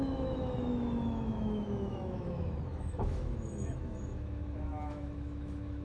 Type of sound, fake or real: fake